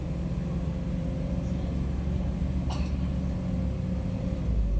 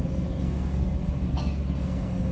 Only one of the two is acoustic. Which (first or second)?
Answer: first